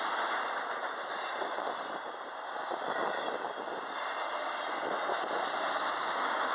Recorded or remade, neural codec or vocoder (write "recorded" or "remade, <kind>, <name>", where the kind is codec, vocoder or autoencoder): recorded